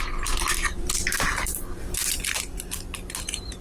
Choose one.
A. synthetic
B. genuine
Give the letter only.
B